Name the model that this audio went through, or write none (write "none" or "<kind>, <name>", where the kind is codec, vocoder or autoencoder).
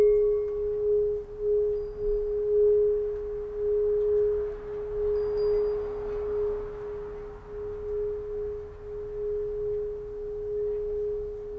none